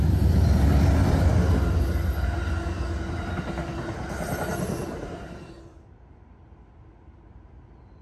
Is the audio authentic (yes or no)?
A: yes